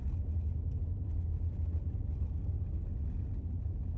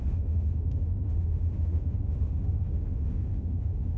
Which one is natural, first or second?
first